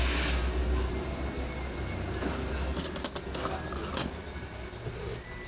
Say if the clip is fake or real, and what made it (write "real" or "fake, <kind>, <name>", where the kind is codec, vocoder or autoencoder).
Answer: real